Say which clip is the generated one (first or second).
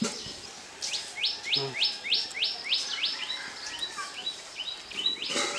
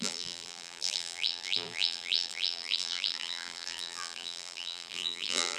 second